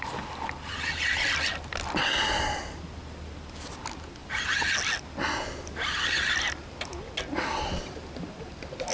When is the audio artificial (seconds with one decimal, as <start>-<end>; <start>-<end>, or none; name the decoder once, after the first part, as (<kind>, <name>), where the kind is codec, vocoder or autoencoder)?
none

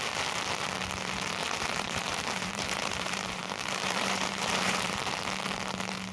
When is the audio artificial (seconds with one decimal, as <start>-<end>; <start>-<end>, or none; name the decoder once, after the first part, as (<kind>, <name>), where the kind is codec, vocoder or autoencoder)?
1.4-5.1 (vocoder, BigVGAN v2)

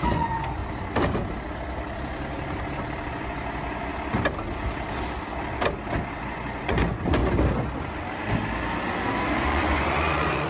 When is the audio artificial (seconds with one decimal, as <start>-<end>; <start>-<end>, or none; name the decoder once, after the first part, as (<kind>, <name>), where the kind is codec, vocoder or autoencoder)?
0.0-0.6 (vocoder, Vocos); 3.1-3.9; 6.2-7.2; 9.4-10.5